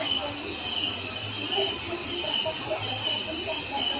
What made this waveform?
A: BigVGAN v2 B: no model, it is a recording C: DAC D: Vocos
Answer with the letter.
B